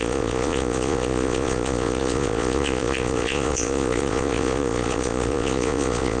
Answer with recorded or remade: remade